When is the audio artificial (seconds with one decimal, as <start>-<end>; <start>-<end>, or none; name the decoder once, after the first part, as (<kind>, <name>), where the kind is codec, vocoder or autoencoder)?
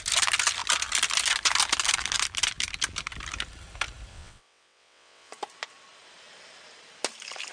4.1-5.3 (vocoder, WaveNeXt)